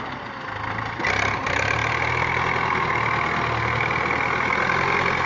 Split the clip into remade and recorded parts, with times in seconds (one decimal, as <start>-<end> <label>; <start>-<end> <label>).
0.0-5.3 recorded